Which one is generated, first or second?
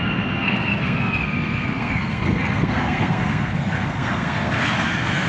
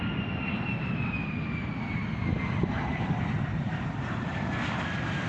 first